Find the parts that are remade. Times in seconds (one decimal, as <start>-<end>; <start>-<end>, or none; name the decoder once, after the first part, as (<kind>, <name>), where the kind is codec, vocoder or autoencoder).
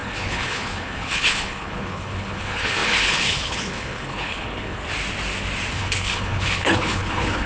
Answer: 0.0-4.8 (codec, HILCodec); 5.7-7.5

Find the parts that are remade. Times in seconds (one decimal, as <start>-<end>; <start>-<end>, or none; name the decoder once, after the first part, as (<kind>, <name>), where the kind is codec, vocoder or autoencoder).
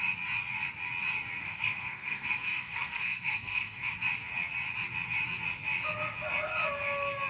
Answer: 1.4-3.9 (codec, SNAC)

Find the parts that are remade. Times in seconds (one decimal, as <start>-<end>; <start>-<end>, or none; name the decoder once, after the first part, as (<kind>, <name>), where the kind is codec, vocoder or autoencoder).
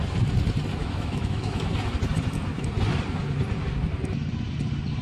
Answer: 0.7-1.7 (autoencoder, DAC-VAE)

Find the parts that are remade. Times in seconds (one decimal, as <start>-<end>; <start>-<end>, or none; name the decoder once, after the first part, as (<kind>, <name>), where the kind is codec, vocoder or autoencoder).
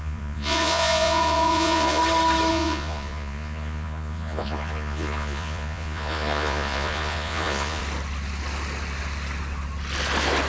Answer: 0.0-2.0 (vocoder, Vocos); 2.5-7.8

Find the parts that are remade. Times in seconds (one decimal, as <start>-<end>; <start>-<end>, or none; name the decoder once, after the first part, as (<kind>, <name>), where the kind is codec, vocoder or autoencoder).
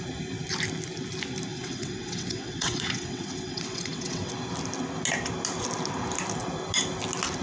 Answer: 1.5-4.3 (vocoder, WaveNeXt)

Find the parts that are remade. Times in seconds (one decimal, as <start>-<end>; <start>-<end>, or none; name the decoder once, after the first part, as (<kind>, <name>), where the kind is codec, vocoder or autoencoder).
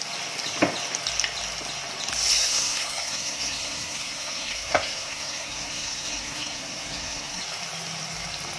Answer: 2.3-7.4 (codec, SNAC)